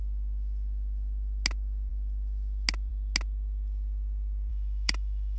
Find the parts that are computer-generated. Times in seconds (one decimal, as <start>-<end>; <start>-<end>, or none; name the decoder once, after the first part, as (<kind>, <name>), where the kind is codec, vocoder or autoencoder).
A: 4.5-5.4 (autoencoder, DAC-VAE)